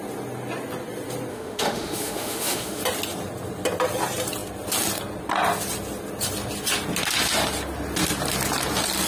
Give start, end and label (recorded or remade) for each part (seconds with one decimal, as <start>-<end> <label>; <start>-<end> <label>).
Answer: 0.0-1.3 recorded; 1.3-2.8 remade; 2.8-9.1 recorded